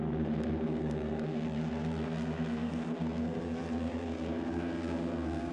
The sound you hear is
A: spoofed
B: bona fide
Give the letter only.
A